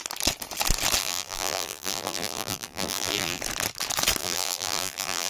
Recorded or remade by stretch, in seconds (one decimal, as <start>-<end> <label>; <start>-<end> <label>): 0.0-1.0 recorded; 1.0-3.4 remade; 3.4-4.2 recorded; 4.2-5.3 remade